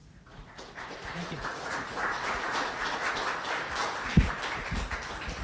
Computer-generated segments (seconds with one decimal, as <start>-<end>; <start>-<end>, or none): 0.0-3.2